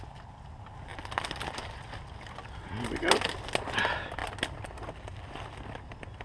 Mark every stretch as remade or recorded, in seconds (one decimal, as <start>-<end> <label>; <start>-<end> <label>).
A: 0.0-6.2 recorded